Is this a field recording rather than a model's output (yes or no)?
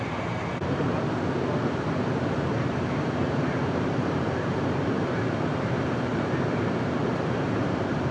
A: no